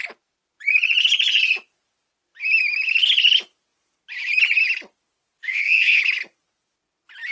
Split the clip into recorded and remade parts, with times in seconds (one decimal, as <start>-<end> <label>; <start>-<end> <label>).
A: 0.0-5.4 recorded; 5.4-6.0 remade; 6.0-7.3 recorded